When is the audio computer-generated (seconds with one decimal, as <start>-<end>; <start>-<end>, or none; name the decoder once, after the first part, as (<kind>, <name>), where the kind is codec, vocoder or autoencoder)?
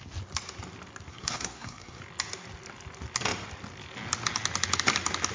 1.1-2.0 (codec, SNAC)